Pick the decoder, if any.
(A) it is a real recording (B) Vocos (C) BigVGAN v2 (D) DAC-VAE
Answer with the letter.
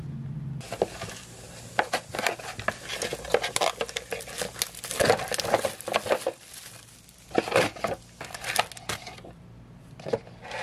A